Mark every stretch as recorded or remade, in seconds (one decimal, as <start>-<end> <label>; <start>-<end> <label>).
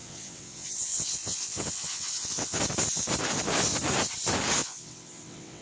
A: 0.0-2.6 remade; 2.6-4.6 recorded; 4.6-5.6 remade